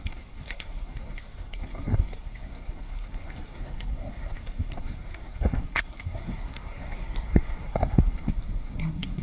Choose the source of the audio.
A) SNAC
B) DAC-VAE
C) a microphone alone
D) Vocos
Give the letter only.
A